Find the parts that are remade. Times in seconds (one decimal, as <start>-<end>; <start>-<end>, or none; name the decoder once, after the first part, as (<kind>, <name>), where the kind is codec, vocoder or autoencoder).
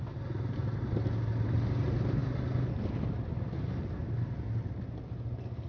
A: none